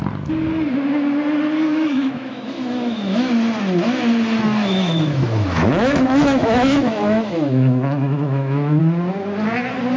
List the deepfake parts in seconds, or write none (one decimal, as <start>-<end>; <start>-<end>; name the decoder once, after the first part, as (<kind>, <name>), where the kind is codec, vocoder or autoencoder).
1.7-3.3 (autoencoder, DAC-VAE); 4.7-8.8